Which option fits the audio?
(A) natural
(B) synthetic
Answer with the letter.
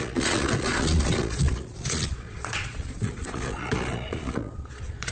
B